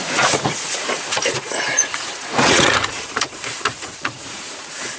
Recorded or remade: remade